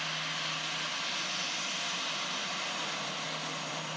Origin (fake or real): real